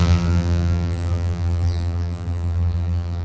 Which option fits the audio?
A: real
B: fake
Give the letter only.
B